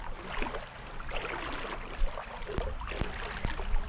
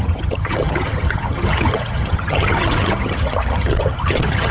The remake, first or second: second